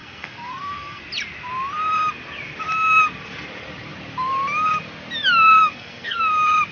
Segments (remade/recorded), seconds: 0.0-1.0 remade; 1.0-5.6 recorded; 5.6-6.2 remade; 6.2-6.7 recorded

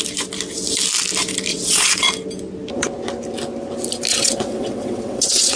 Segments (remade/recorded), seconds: 0.0-1.5 recorded; 1.5-2.1 remade; 2.1-4.1 recorded; 4.1-5.6 remade

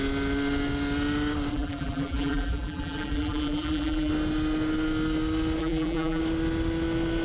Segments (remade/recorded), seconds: 0.0-1.5 recorded; 1.5-4.1 remade; 4.1-5.6 recorded; 5.6-6.2 remade; 6.2-7.2 recorded

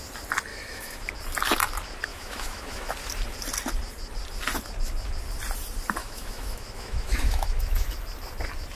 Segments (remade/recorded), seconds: 0.0-0.5 recorded; 0.5-1.1 remade; 1.1-2.1 recorded; 2.1-2.9 remade; 2.9-6.0 recorded; 6.0-7.9 remade; 7.9-8.7 recorded

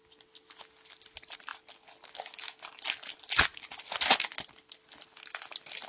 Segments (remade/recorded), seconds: 0.0-5.9 recorded

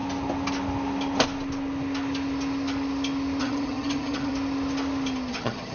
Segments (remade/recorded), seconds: 0.0-3.4 recorded; 3.4-4.3 remade; 4.3-5.3 recorded; 5.3-5.7 remade

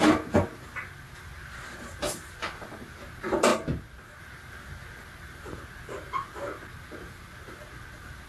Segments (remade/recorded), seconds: 0.0-8.3 recorded